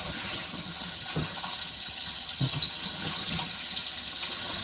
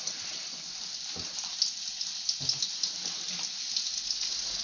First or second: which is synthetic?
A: first